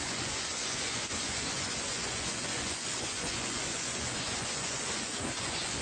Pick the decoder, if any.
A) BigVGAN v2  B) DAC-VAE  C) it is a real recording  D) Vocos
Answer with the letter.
D